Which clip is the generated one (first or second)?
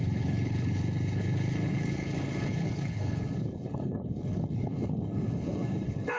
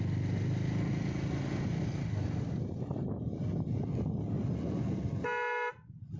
first